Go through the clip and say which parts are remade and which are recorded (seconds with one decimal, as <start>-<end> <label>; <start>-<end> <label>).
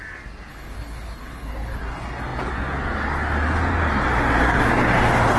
0.0-0.5 recorded; 0.5-1.8 remade; 1.8-5.4 recorded